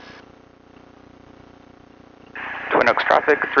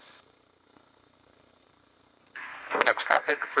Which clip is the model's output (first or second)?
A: second